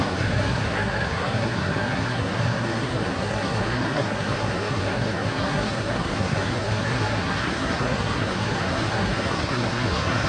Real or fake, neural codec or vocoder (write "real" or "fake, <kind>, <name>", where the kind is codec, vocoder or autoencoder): fake, codec, SNAC